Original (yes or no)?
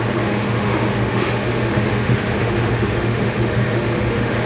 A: no